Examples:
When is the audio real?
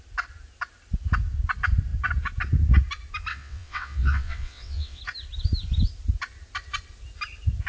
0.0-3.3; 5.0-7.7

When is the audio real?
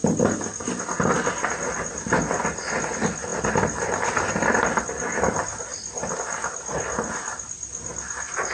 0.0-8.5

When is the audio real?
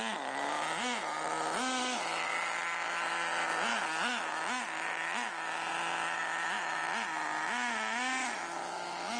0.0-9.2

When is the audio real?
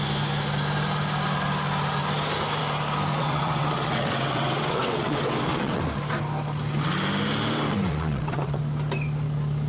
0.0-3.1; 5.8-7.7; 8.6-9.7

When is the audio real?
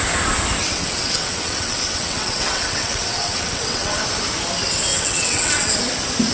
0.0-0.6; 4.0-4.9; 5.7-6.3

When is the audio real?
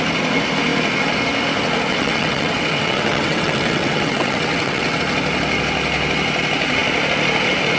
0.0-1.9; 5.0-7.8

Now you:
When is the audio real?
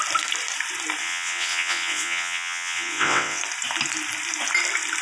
0.0-1.0; 3.4-5.0